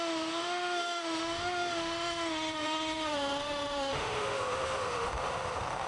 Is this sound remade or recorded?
remade